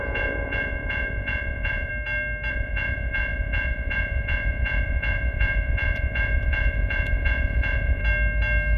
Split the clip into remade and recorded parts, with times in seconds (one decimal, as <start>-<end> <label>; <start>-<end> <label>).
0.0-1.9 remade; 1.9-2.5 recorded; 2.5-8.0 remade; 8.0-8.8 recorded